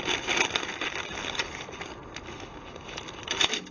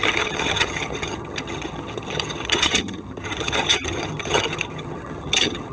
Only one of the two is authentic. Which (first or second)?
first